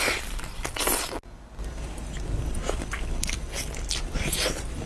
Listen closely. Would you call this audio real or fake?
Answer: real